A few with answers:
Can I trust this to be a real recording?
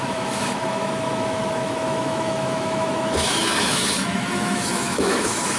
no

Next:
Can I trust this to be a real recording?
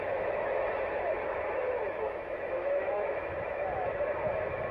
no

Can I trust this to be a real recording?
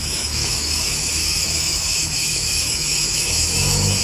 no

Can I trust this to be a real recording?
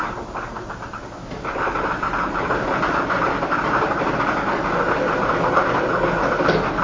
yes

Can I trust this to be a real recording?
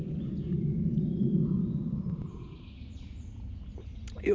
yes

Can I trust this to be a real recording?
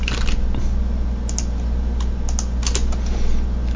yes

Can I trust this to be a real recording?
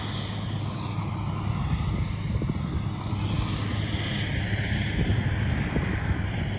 yes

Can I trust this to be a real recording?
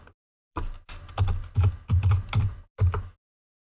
yes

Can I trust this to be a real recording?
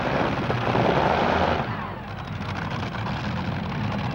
yes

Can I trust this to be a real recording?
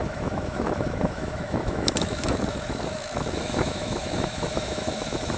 no